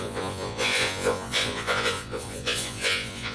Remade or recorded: remade